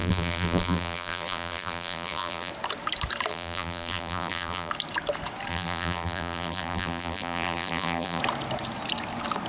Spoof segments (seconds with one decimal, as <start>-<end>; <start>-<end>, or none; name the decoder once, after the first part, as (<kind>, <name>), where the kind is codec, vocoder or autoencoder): 0.0-2.5 (vocoder, BigVGAN v2); 3.3-4.7; 5.5-8.2